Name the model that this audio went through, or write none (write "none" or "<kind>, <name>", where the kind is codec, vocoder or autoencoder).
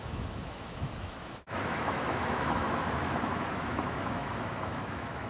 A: autoencoder, DAC-VAE